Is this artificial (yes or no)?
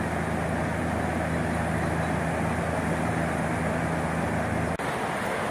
no